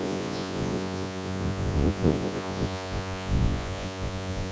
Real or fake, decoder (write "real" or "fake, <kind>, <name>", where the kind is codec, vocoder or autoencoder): fake, vocoder, Vocos